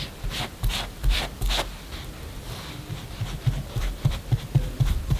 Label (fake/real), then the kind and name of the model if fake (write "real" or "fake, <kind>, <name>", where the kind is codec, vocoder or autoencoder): fake, vocoder, BigVGAN v2